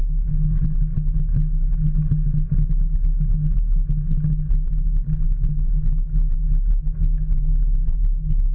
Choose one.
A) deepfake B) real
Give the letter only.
B